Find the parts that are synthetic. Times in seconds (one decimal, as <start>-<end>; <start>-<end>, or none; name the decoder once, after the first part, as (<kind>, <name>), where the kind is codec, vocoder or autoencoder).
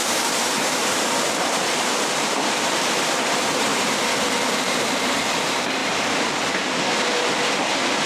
0.0-3.7 (vocoder, BigVGAN v2); 4.6-5.8; 7.6-8.1